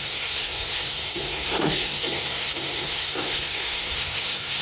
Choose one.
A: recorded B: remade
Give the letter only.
B